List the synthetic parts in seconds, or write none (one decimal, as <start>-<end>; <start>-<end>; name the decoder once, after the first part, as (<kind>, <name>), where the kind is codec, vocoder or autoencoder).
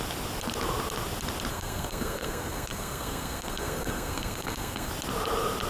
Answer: 1.5-4.9 (codec, SNAC)